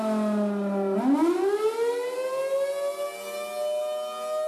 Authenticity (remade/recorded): recorded